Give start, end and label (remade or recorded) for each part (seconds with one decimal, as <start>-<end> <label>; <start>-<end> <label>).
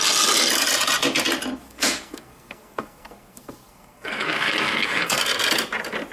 0.0-1.6 recorded; 1.6-5.2 remade; 5.2-6.1 recorded